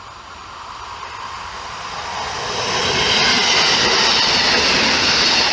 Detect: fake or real real